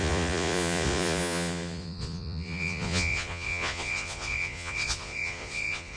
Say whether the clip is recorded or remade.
remade